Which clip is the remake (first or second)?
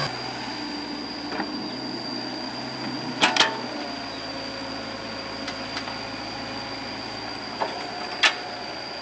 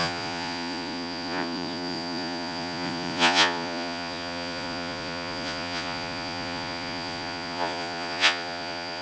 second